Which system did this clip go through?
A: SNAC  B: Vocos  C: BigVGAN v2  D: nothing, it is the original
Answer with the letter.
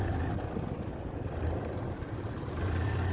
D